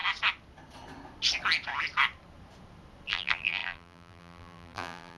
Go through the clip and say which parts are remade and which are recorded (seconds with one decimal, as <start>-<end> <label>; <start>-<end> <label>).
0.0-3.1 recorded; 3.1-5.2 remade